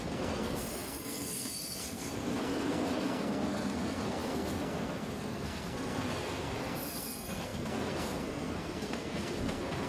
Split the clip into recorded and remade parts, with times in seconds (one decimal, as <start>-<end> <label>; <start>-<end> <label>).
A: 0.0-9.9 remade